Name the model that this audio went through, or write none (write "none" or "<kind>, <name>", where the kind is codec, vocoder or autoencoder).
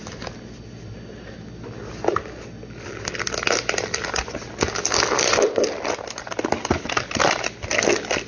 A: none